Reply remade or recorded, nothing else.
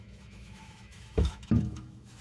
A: remade